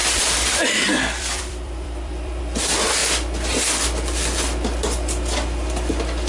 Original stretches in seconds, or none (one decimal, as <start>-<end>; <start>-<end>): 2.4-6.3

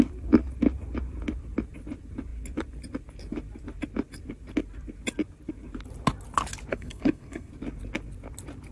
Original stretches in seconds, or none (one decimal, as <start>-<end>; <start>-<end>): 0.0-6.7; 7.5-8.7

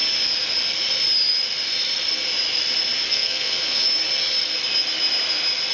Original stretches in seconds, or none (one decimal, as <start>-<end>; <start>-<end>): 0.0-3.1; 3.8-5.7